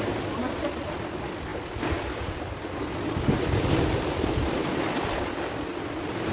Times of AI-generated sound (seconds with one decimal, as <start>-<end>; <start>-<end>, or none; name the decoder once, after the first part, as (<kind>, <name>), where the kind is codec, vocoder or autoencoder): none